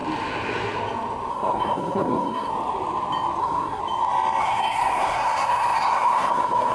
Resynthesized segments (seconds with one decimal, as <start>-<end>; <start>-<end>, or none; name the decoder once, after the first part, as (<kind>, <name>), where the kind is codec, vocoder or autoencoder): 1.3-2.5 (codec, SNAC); 3.4-3.8; 4.4-6.7